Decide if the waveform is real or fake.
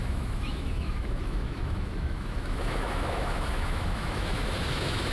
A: fake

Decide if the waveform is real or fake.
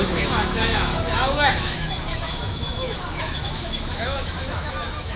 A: fake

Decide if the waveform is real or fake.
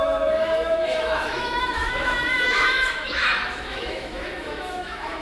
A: fake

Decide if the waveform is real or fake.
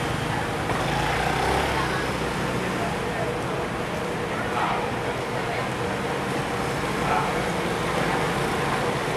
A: real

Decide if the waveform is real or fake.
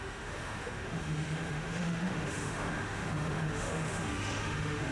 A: fake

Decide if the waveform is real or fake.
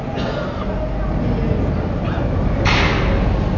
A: real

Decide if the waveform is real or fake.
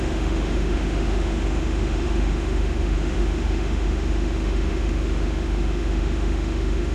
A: fake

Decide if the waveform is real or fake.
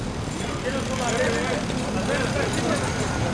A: real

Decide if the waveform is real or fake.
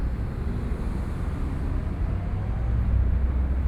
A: real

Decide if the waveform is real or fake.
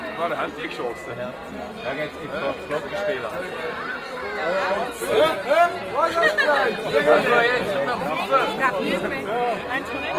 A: real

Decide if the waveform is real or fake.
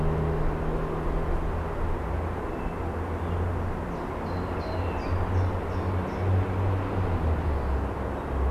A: real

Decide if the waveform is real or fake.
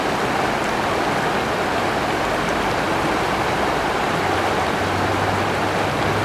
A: real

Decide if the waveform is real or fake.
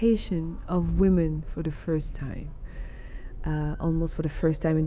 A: fake